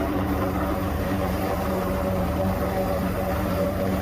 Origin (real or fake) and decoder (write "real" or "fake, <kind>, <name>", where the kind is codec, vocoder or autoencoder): fake, vocoder, BigVGAN v2